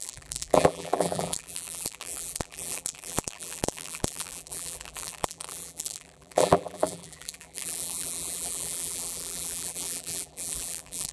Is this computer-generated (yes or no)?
yes